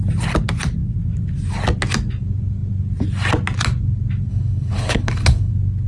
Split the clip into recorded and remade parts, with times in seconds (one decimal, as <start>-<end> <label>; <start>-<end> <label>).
0.0-4.3 recorded; 4.3-5.5 remade; 5.5-5.9 recorded

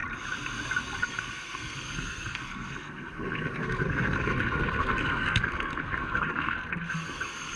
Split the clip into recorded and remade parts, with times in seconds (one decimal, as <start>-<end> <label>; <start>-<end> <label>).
0.0-1.0 recorded; 1.0-7.6 remade

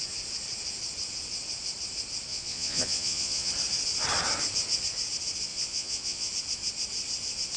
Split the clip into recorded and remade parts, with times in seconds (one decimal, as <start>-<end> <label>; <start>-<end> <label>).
0.0-2.3 recorded; 2.3-3.5 remade; 3.5-5.5 recorded; 5.5-6.3 remade; 6.3-7.6 recorded